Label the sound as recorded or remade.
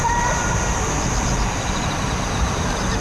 recorded